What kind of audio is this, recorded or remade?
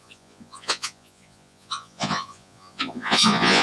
remade